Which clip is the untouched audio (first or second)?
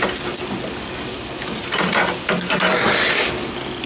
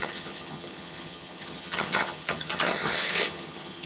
first